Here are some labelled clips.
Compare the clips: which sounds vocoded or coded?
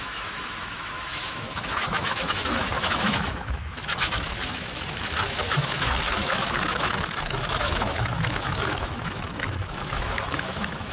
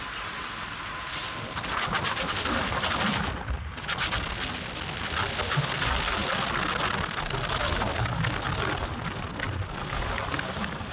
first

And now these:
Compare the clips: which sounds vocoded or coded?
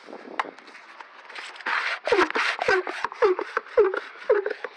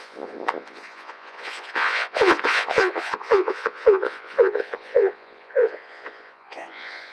second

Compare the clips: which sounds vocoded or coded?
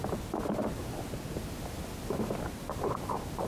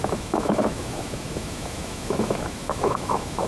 second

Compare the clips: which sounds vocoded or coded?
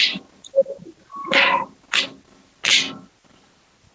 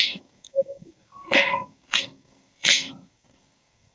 second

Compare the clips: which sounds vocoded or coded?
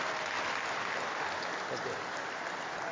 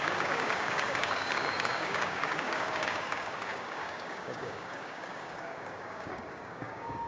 second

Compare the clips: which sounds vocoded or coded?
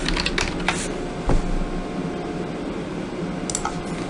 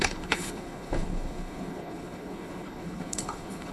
second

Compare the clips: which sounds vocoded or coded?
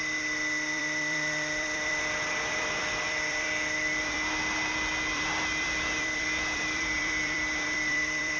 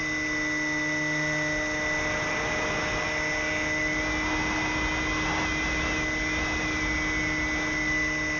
first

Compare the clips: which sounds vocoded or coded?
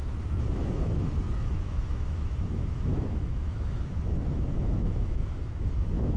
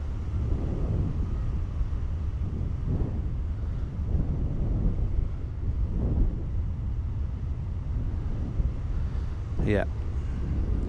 first